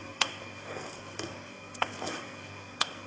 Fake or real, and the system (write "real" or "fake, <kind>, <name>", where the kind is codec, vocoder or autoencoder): fake, codec, SNAC